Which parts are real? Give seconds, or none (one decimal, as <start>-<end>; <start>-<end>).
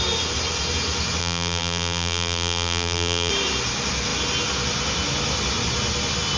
0.0-1.2; 3.3-6.4